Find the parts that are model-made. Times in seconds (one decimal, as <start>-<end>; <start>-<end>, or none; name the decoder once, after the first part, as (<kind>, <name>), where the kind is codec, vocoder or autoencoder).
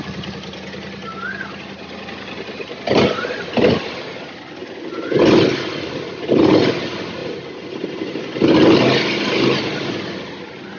none